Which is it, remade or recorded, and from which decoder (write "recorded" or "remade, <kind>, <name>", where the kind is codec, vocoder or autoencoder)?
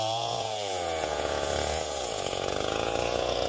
remade, vocoder, Vocos